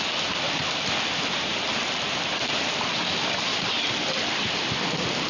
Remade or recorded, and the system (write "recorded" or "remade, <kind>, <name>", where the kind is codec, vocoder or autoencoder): remade, vocoder, BigVGAN v2